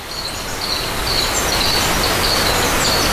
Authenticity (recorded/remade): recorded